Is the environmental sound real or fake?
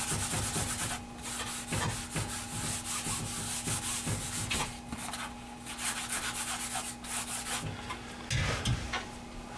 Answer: real